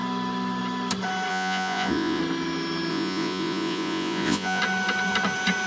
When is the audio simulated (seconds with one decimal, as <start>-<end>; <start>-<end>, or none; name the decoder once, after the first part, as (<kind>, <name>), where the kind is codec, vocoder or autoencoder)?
1.3-2.2 (vocoder, Vocos); 2.9-4.6